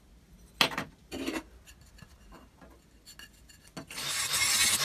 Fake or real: real